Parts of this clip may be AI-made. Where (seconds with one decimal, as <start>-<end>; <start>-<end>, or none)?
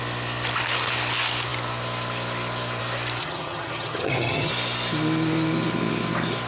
3.2-4.5